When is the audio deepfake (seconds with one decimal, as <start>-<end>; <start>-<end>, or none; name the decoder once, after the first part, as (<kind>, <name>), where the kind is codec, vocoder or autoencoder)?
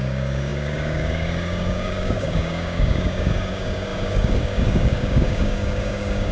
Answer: 0.0-6.3 (codec, DAC)